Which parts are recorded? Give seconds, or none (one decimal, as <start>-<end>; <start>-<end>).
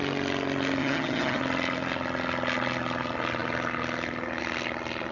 0.0-0.8; 1.4-5.1